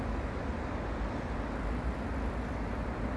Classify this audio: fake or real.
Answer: real